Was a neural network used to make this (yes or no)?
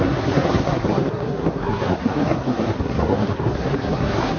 yes